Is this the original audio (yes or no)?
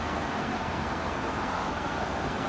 no